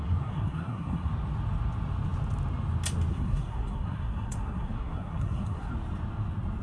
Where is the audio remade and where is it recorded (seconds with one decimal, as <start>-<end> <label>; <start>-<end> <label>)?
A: 0.0-1.1 remade; 1.1-3.1 recorded; 3.1-5.7 remade; 5.7-6.6 recorded